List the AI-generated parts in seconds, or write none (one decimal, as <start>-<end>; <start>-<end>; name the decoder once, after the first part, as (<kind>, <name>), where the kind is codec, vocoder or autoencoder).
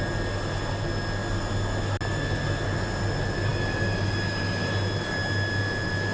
none